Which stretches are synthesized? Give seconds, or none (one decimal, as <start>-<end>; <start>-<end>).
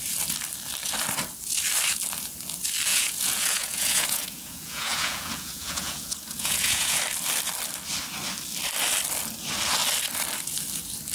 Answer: 2.9-7.0